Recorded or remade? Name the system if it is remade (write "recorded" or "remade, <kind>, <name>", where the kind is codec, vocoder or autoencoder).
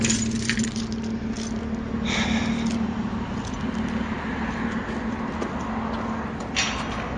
recorded